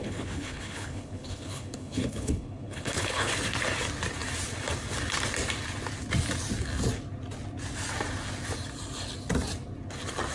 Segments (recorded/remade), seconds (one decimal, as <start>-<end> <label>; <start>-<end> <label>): 0.0-3.3 remade; 3.3-10.3 recorded